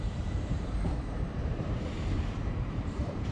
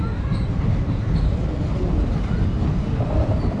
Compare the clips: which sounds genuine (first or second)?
second